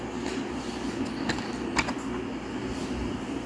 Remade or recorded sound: recorded